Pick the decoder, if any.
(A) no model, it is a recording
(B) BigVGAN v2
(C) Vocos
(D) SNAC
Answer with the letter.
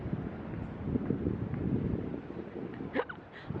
A